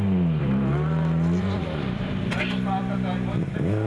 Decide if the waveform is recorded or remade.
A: remade